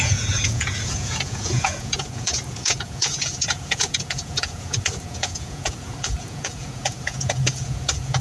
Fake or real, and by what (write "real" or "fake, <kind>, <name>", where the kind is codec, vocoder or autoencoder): fake, vocoder, Vocos